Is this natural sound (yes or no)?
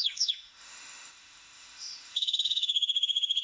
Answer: no